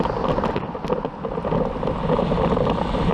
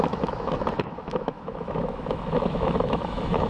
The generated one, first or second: second